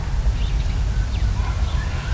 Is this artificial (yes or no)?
no